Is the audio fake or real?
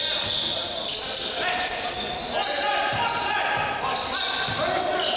real